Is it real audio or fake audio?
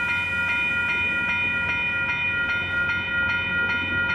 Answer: real